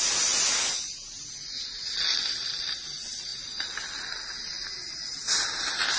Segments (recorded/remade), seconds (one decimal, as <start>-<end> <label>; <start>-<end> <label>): 0.0-6.0 recorded